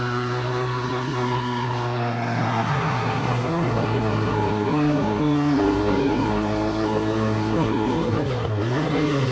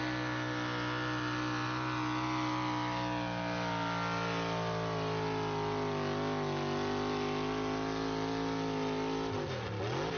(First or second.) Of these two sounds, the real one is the second